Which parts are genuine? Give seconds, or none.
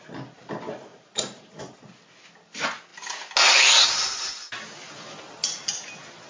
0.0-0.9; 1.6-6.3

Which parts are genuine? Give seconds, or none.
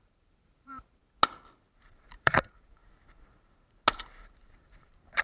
1.0-2.0; 2.8-4.5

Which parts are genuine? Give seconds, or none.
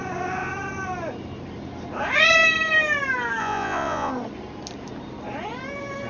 0.0-3.4; 4.1-6.1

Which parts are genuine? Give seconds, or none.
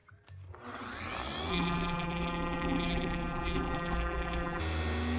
0.0-1.5; 4.6-5.2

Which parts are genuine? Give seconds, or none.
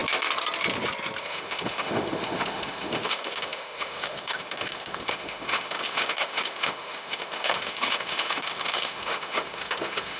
0.0-1.2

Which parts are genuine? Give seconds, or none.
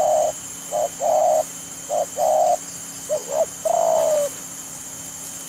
0.0-1.2; 2.2-3.2; 4.8-5.5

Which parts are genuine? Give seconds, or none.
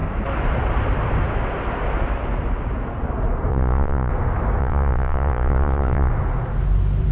0.0-3.5; 4.1-4.6; 6.1-7.1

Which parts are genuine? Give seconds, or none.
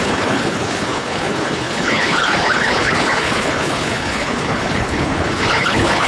none